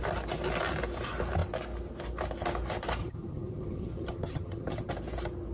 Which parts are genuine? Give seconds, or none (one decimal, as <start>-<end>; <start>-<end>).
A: 0.0-3.0; 4.9-5.5